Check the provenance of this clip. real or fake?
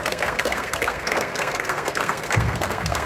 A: fake